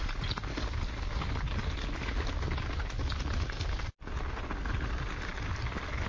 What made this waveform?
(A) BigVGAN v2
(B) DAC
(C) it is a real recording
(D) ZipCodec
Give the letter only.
C